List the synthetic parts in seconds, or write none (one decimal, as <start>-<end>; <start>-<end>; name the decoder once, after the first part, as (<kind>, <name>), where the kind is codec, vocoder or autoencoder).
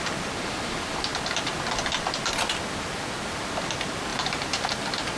4.1-4.7 (vocoder, BigVGAN v2)